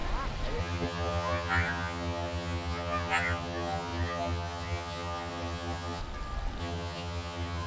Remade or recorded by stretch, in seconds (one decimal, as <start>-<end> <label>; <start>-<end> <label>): 0.0-0.6 recorded; 0.6-6.0 remade; 6.0-6.6 recorded; 6.6-7.7 remade